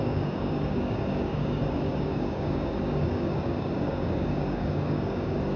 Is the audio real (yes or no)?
no